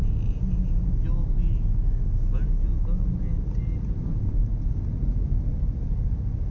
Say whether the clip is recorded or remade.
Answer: recorded